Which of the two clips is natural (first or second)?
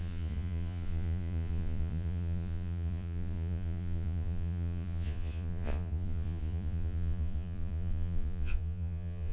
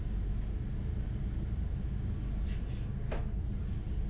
second